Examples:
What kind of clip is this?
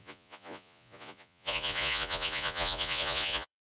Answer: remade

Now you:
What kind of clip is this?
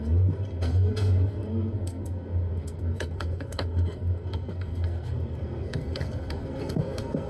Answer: remade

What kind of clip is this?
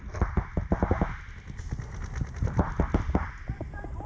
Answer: recorded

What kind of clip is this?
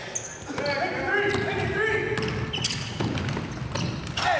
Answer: recorded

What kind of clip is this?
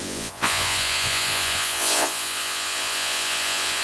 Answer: remade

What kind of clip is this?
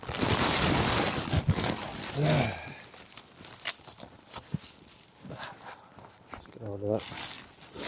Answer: recorded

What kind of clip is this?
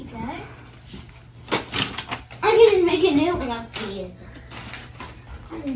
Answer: recorded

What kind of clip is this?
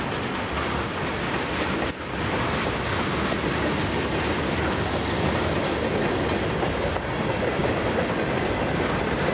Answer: recorded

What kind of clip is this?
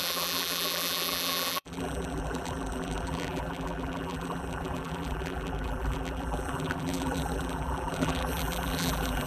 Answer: remade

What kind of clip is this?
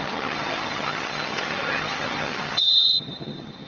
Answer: remade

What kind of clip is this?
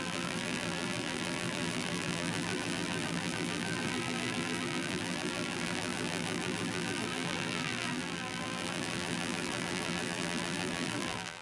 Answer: remade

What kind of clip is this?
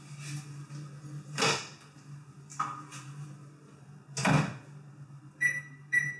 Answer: recorded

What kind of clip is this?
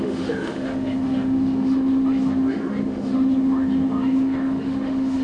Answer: remade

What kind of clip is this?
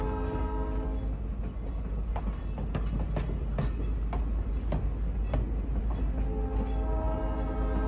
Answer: recorded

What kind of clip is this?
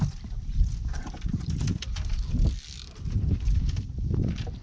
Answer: recorded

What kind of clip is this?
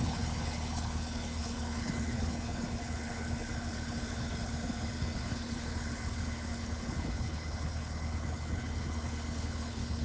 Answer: remade